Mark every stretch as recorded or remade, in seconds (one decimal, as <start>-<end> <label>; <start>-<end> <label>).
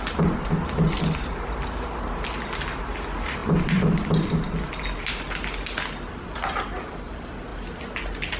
0.0-8.4 recorded